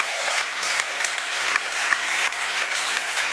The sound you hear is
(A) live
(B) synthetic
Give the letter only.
B